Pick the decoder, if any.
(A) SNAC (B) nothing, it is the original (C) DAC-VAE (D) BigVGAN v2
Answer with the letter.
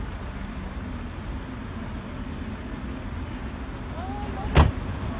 B